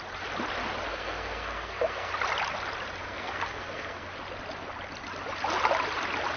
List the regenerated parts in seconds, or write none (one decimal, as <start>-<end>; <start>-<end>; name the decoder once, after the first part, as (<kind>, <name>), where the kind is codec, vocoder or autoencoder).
0.9-2.1 (codec, SNAC); 3.0-4.1